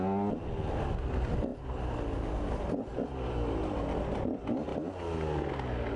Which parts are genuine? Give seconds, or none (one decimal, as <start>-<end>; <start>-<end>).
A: 0.0-6.0